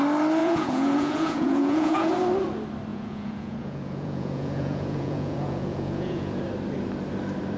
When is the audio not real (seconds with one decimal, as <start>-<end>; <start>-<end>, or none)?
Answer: 0.4-2.1; 2.9-6.4